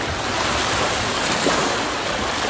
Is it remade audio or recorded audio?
recorded